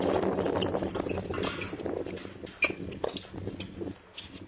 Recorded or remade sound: recorded